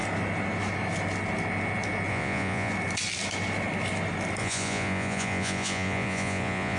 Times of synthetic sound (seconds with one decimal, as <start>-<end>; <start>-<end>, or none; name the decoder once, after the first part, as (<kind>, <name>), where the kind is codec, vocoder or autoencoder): 2.1-2.7 (vocoder, Vocos); 4.4-6.8